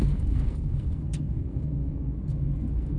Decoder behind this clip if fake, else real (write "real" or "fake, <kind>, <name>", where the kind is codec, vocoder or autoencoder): fake, codec, SNAC